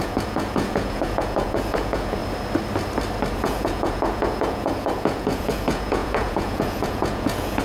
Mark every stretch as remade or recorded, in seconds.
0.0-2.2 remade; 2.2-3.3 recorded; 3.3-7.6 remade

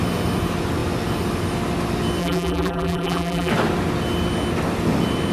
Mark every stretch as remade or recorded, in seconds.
0.0-2.2 recorded; 2.2-3.5 remade; 3.5-5.3 recorded

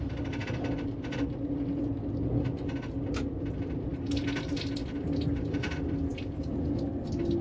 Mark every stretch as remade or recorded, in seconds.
0.0-7.4 recorded

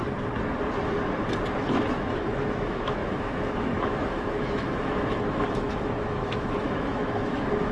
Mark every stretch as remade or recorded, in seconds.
0.0-1.5 recorded; 1.5-7.7 remade

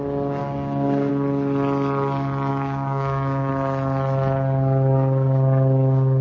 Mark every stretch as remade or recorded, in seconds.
0.0-0.4 recorded; 0.4-1.1 remade; 1.1-2.5 recorded; 2.5-3.5 remade; 3.5-6.2 recorded

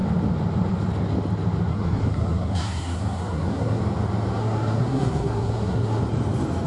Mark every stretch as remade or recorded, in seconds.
0.0-1.7 recorded; 1.7-3.8 remade; 3.8-4.4 recorded; 4.4-6.0 remade; 6.0-6.7 recorded